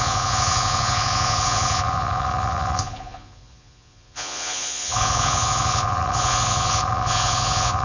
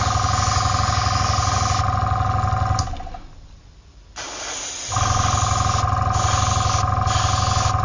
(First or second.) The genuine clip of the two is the second